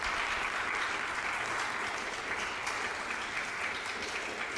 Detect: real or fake real